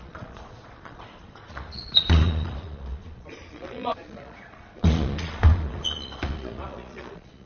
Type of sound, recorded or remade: remade